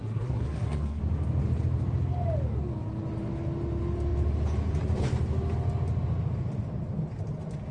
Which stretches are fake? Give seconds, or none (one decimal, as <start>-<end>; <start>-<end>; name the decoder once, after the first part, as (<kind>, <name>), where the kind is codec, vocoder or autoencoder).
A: 0.0-1.0 (codec, SNAC)